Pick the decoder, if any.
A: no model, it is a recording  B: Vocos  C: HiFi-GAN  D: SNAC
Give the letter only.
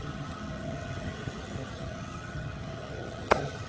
C